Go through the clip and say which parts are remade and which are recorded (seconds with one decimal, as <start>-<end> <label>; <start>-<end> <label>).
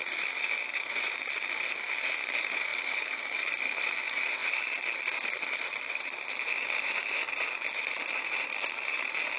0.0-9.4 remade